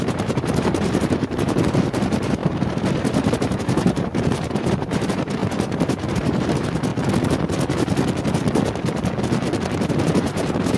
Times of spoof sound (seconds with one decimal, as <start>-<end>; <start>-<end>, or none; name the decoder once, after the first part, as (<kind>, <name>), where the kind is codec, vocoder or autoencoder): 0.0-6.9 (vocoder, BigVGAN v2); 9.9-10.8